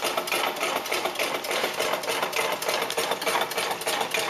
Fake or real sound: real